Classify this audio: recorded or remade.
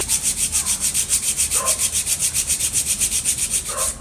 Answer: remade